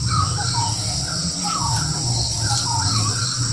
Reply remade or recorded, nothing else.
recorded